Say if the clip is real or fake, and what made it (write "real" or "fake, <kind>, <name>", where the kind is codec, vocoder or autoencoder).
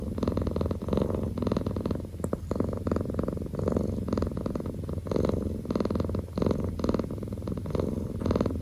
real